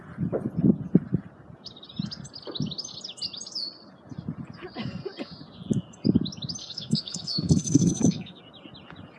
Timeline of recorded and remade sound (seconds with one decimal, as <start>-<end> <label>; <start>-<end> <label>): 0.0-6.6 recorded; 6.6-8.4 remade; 8.4-9.2 recorded